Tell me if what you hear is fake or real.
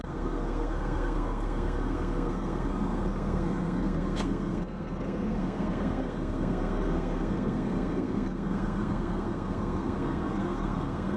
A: fake